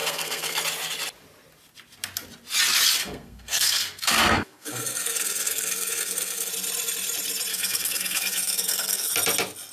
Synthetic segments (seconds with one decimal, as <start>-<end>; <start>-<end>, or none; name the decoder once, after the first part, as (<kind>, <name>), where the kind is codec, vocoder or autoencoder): 0.0-0.6 (codec, SNAC); 3.0-6.5; 7.5-9.1